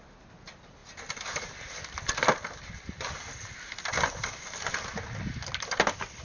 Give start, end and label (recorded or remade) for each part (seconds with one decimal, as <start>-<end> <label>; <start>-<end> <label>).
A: 0.0-6.2 recorded